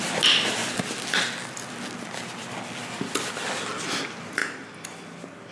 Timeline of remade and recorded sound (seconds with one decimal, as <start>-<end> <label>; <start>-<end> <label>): 0.0-5.5 recorded